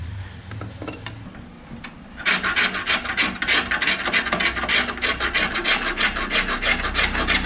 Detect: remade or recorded recorded